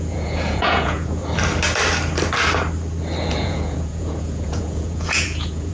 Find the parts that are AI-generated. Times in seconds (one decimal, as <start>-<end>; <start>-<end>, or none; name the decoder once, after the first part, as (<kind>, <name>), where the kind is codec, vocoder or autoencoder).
0.0-1.2 (vocoder, Vocos); 3.3-5.7